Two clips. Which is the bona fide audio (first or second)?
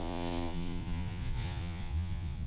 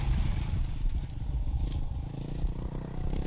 second